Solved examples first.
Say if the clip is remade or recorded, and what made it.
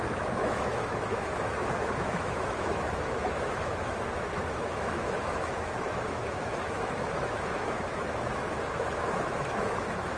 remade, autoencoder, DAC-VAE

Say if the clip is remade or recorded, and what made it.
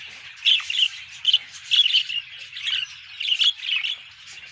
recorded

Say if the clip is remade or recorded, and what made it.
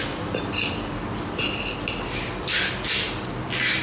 recorded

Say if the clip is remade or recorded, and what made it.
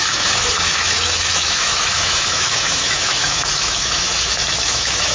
remade, autoencoder, DAC-VAE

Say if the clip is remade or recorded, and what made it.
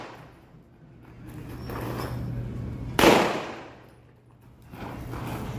recorded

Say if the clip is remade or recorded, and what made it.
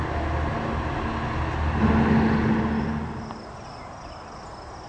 recorded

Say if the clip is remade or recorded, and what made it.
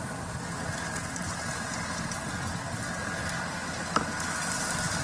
recorded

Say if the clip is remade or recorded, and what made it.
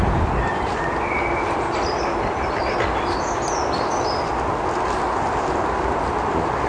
recorded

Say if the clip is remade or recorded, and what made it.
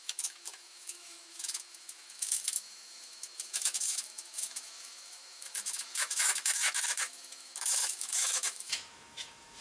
remade, autoencoder, DAC-VAE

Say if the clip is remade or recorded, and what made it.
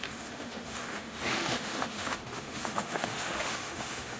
remade, autoencoder, DAC-VAE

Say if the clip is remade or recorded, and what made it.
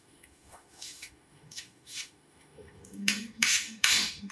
remade, autoencoder, DAC-VAE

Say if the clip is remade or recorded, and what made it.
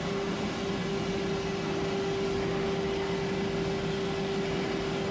recorded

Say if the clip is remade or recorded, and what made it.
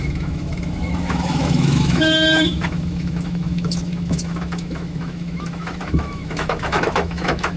remade, autoencoder, DAC-VAE